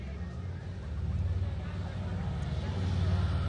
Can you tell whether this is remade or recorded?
recorded